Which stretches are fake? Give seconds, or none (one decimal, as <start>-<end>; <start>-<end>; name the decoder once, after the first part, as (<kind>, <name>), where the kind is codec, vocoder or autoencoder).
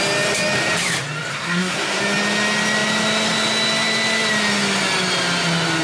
1.3-2.0 (codec, SNAC)